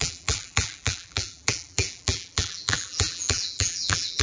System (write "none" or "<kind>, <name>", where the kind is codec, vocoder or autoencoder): vocoder, BigVGAN v2